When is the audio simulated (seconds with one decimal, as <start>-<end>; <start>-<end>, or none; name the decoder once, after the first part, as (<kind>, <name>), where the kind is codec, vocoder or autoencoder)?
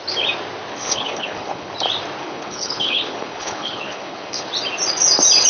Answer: 0.7-1.7 (codec, HILCodec); 2.2-4.5